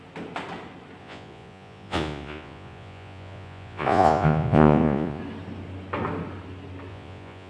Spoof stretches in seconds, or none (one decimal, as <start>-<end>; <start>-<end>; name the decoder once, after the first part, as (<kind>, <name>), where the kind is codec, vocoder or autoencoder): 1.0-5.2 (vocoder, Vocos); 6.9-7.5